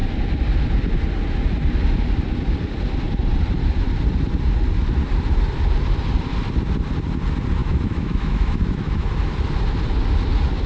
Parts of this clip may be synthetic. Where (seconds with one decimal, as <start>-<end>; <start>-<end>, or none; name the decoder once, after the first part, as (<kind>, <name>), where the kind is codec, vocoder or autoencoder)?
7.6-9.1 (autoencoder, DAC-VAE)